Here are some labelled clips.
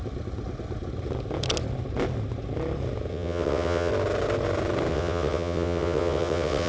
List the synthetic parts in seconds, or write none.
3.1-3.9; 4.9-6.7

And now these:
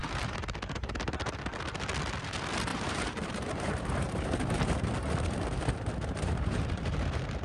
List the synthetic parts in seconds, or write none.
0.0-0.9; 2.7-7.4

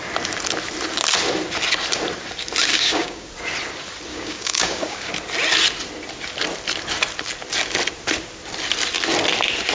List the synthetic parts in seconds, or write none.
2.7-3.3; 4.1-5.1

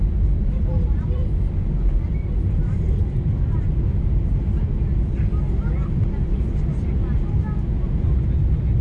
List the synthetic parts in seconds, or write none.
0.0-1.2; 2.0-3.9; 8.3-8.8

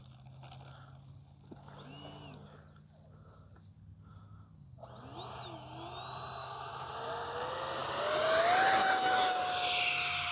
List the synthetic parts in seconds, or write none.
6.4-6.9; 8.8-9.4